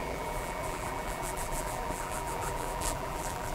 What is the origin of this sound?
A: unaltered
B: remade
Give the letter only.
B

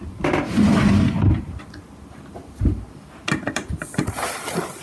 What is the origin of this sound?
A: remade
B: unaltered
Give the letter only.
B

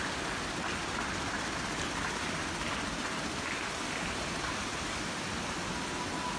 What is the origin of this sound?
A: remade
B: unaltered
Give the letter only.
B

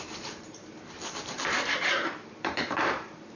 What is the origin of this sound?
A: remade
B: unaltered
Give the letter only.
A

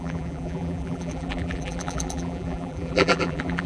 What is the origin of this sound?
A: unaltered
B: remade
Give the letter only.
B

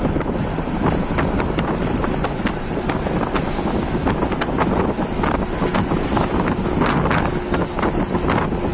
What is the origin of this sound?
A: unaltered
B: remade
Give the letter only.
A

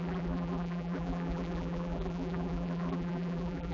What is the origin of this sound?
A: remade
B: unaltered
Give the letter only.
A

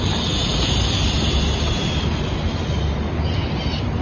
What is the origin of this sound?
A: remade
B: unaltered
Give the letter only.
B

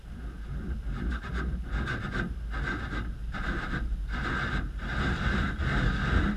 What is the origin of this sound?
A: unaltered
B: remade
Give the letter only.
A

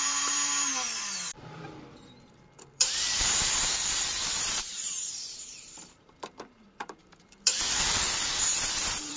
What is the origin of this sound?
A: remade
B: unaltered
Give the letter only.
A